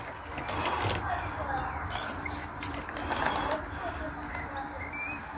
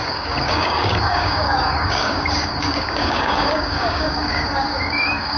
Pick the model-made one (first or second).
second